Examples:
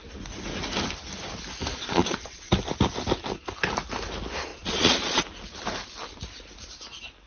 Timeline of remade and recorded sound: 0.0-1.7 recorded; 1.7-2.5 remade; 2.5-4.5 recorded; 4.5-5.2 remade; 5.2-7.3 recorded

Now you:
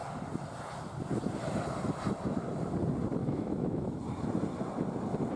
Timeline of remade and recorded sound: 0.0-3.2 recorded; 3.2-4.0 remade; 4.0-5.4 recorded

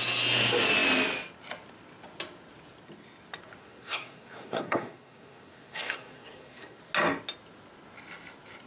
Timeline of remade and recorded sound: 0.0-3.6 recorded; 3.6-6.8 remade; 6.8-8.7 recorded

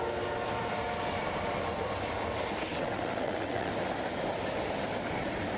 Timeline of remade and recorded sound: 0.0-2.7 recorded; 2.7-3.7 remade; 3.7-5.6 recorded